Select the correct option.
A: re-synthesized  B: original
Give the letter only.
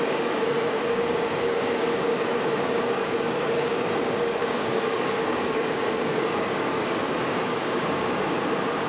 A